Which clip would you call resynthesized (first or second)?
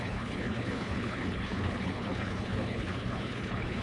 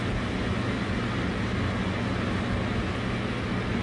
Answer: first